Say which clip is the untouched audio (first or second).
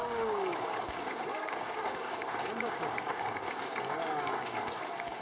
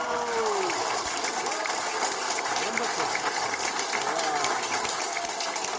second